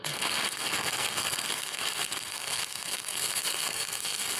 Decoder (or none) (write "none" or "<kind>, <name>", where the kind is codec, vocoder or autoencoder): codec, SNAC